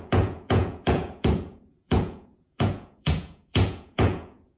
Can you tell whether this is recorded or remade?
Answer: remade